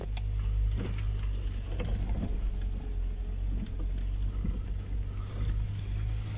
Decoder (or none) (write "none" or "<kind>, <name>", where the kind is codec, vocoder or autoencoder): none